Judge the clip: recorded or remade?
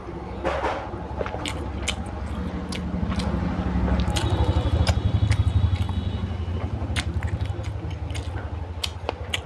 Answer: recorded